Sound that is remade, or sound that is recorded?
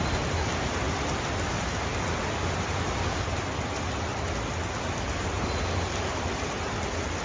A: recorded